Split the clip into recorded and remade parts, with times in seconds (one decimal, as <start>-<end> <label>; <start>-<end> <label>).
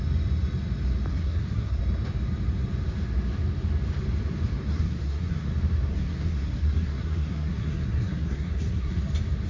0.0-1.1 recorded; 1.1-1.8 remade; 1.8-4.7 recorded; 4.7-5.5 remade; 5.5-5.9 recorded; 5.9-9.0 remade; 9.0-9.5 recorded